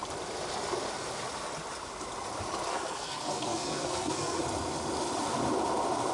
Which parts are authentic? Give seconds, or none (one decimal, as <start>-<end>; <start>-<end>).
0.0-2.7; 4.4-6.1